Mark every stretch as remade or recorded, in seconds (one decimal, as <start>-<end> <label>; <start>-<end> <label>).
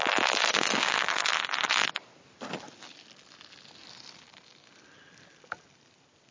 0.0-0.5 recorded; 0.5-1.3 remade; 1.3-6.3 recorded